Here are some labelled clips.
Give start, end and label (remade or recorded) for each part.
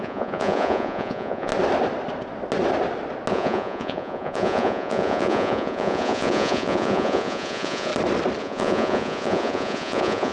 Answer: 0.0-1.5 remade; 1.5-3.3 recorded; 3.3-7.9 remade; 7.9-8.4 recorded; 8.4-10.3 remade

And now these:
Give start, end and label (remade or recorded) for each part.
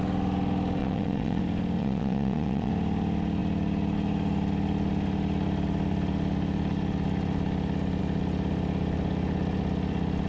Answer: 0.0-0.8 recorded; 0.8-1.4 remade; 1.4-1.8 recorded; 1.8-2.7 remade; 2.7-10.3 recorded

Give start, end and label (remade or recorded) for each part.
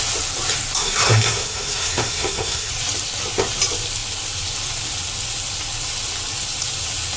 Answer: 0.0-0.8 recorded; 0.8-2.7 remade; 2.7-7.2 recorded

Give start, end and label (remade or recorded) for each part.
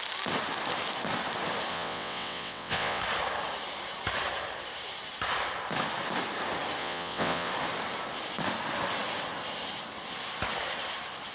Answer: 0.0-1.7 recorded; 1.7-3.0 remade; 3.0-6.8 recorded; 6.8-7.5 remade; 7.5-11.3 recorded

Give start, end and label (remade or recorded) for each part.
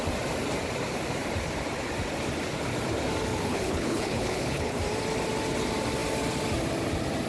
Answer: 0.0-3.3 recorded; 3.3-4.8 remade; 4.8-7.3 recorded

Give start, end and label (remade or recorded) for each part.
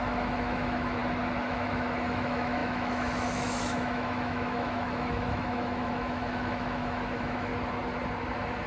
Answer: 0.0-1.0 remade; 1.0-1.5 recorded; 1.5-7.5 remade; 7.5-8.7 recorded